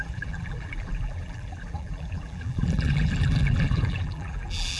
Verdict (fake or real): fake